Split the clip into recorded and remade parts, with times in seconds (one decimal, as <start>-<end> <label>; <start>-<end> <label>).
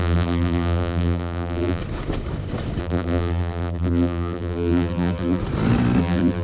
0.0-1.8 remade; 1.8-2.8 recorded; 2.8-5.4 remade; 5.4-6.0 recorded; 6.0-6.4 remade